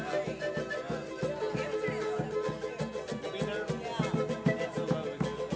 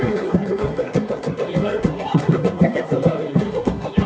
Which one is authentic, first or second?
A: first